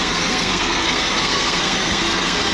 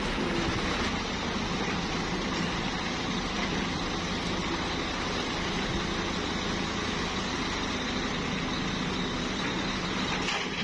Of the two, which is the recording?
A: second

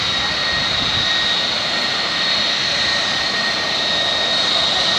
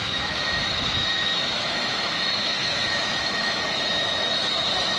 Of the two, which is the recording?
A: first